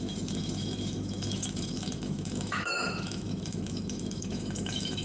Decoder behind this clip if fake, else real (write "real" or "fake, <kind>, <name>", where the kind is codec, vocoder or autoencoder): fake, autoencoder, DAC-VAE